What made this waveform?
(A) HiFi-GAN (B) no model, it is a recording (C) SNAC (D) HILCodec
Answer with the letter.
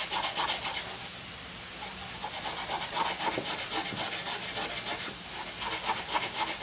B